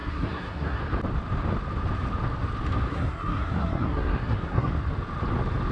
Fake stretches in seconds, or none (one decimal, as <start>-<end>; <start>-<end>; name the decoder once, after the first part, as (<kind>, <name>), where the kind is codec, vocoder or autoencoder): 0.0-0.8 (codec, SNAC); 2.9-4.7